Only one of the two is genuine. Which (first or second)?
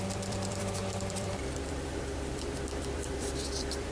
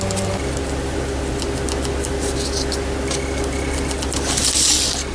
second